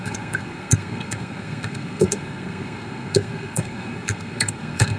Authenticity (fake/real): fake